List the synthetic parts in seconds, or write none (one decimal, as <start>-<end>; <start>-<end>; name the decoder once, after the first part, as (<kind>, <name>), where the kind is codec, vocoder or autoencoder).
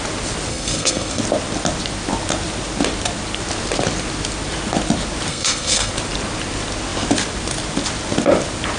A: 0.5-1.2 (codec, SNAC); 5.3-5.9